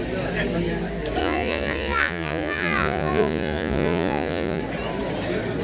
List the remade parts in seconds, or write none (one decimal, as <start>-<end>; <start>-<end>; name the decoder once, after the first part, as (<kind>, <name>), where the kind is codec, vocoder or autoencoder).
1.2-4.6 (vocoder, Vocos)